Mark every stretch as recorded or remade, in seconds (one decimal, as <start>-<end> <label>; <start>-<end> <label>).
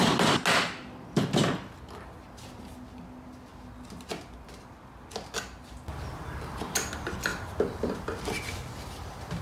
0.0-9.4 recorded